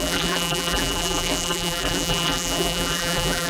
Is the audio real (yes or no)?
no